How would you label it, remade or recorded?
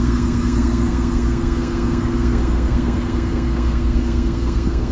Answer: remade